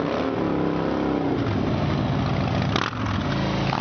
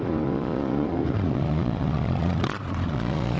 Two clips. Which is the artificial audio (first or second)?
second